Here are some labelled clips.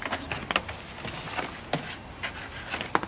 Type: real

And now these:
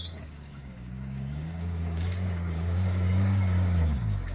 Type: fake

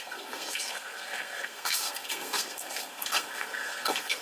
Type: fake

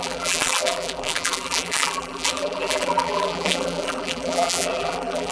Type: fake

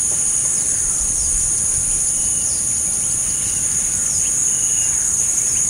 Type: real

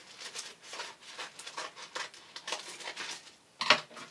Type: real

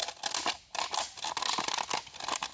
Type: real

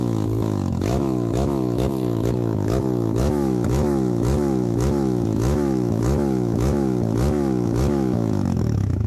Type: fake